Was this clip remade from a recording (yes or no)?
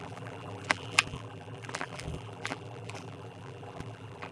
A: yes